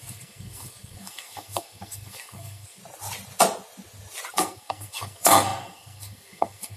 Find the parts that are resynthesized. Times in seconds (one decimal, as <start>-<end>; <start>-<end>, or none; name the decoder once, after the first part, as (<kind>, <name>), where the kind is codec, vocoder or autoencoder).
0.0-2.8 (codec, SNAC); 4.3-6.8